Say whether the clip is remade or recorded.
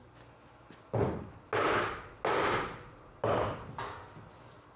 recorded